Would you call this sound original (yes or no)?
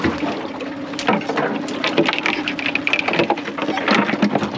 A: yes